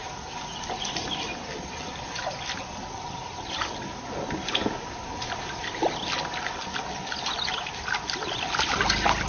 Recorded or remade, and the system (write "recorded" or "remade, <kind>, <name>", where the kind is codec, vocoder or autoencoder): recorded